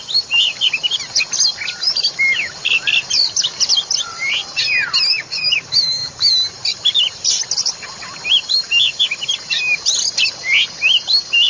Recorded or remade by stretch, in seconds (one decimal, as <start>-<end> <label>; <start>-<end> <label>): 0.0-5.1 recorded; 5.1-6.3 remade; 6.3-11.5 recorded